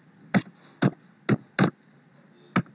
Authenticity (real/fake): real